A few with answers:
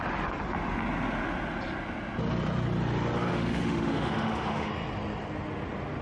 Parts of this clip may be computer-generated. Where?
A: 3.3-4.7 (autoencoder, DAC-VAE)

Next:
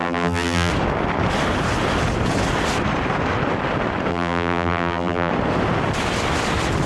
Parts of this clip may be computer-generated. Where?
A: 0.0-0.7 (vocoder, BigVGAN v2); 4.1-5.3

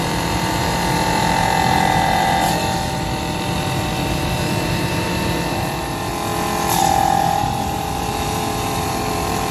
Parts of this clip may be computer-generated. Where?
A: 0.0-6.1 (vocoder, BigVGAN v2); 6.8-9.5